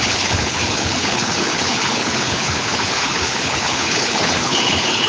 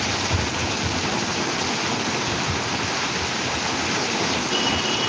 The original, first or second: second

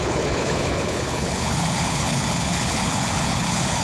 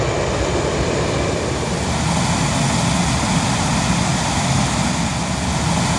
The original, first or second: second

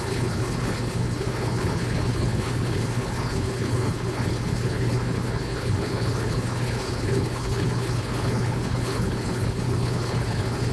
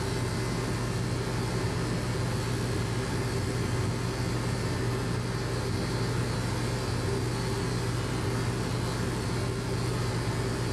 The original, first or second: second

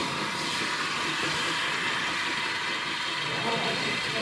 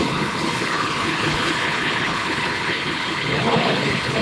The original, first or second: first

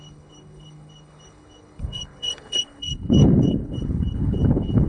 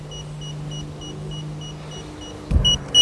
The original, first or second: second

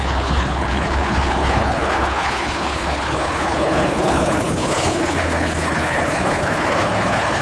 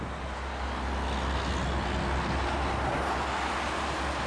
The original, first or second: second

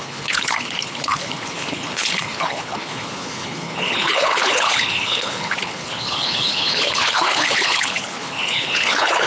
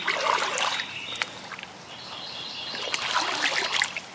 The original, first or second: second